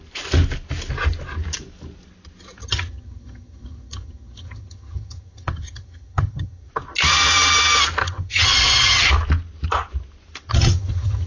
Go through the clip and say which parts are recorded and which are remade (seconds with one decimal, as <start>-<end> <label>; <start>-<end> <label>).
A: 0.0-2.6 recorded; 2.6-6.7 remade; 6.7-8.0 recorded; 8.0-9.1 remade; 9.1-10.5 recorded; 10.5-11.3 remade